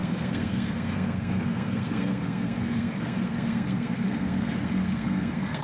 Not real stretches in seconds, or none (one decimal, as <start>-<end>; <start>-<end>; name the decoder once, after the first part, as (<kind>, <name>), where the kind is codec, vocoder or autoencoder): 0.0-5.6 (codec, SNAC)